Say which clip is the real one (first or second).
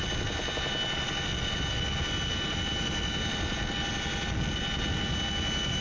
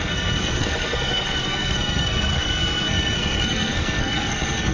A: first